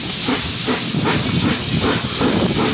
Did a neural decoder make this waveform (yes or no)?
no